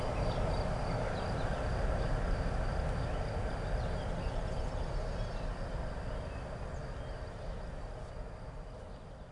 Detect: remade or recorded recorded